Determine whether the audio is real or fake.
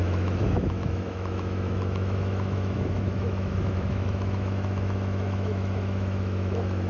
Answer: fake